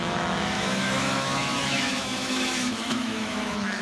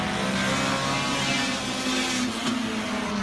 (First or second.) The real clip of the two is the second